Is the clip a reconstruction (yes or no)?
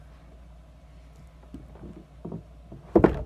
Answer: no